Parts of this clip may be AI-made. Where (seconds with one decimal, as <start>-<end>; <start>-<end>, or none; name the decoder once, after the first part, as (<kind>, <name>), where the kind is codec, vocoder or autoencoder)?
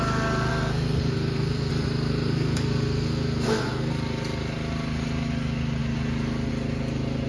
0.5-1.7 (codec, SNAC); 2.1-3.9